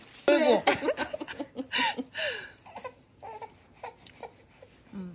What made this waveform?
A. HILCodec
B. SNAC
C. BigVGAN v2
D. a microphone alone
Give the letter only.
D